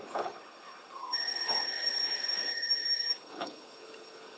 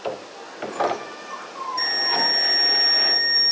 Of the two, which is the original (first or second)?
second